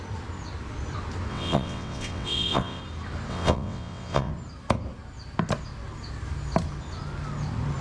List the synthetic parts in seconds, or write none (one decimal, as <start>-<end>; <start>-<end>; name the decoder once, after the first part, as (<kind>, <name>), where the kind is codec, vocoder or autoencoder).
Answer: 1.3-2.8 (vocoder, WaveNeXt); 3.3-4.3